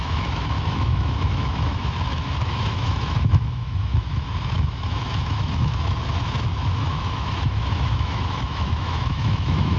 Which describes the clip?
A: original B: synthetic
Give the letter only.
B